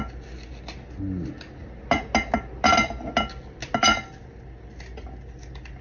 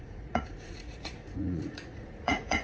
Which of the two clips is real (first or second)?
first